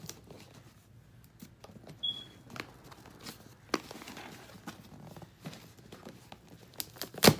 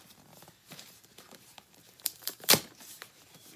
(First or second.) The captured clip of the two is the first